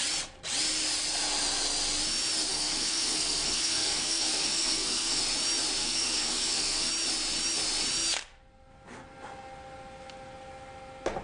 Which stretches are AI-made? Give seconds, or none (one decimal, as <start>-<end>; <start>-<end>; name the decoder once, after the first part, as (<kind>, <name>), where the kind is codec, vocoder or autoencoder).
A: 2.5-5.2 (codec, SNAC); 5.8-6.9